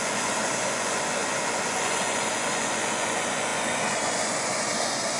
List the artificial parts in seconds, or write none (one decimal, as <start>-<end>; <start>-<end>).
0.0-5.2